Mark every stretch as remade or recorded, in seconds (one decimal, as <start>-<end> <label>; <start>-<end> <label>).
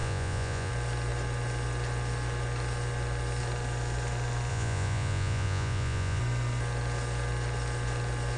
0.0-0.7 remade; 0.7-4.5 recorded; 4.5-6.2 remade; 6.2-8.4 recorded